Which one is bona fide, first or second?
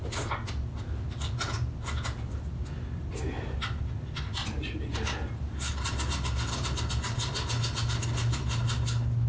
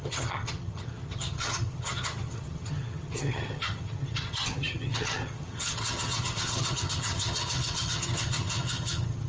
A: first